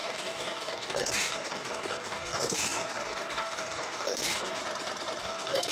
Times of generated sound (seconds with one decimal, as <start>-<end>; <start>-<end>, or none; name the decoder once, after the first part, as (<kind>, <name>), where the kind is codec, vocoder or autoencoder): 0.0-4.6 (codec, DAC); 5.2-5.7